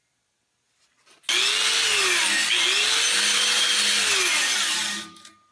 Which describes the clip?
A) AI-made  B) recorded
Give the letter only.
B